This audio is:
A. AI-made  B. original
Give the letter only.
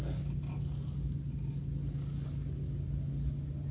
B